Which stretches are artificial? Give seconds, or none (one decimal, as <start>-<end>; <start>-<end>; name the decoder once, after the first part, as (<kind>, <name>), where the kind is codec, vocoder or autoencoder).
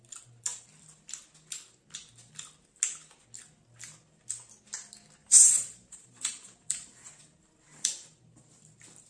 5.2-8.4 (vocoder, BigVGAN v2)